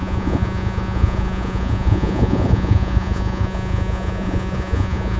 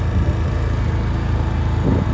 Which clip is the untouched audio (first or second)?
second